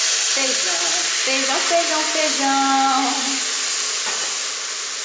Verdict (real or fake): real